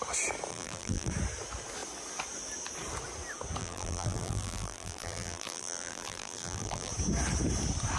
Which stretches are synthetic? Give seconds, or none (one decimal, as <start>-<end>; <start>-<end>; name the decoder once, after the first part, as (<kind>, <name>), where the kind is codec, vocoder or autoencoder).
0.5-1.1 (vocoder, BigVGAN v2); 3.6-6.9